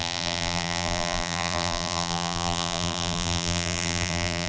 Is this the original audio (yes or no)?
no